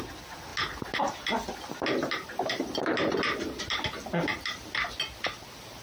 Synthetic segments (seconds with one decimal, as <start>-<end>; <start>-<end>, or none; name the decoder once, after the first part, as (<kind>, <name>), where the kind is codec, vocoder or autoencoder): none